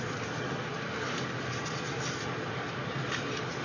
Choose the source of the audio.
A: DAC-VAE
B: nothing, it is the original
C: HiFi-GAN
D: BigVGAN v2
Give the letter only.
B